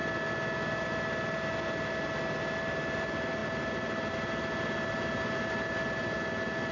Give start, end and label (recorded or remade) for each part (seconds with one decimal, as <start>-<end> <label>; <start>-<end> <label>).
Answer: 0.0-6.7 recorded